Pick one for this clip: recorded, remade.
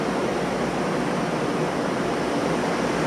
recorded